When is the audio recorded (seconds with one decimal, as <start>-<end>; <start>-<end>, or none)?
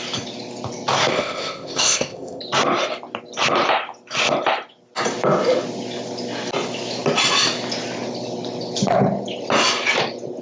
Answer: 0.0-1.1; 2.4-10.4